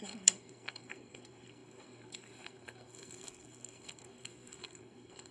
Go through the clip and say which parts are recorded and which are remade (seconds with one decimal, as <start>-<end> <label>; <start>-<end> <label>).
0.0-5.3 remade